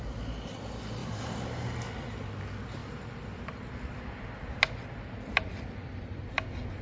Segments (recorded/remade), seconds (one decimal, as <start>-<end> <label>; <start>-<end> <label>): 0.0-1.0 recorded; 1.0-1.8 remade; 1.8-6.8 recorded